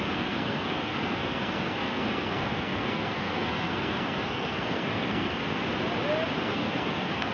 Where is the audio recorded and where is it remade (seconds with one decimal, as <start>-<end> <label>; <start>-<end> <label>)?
0.0-5.6 remade; 5.6-6.4 recorded; 6.4-7.3 remade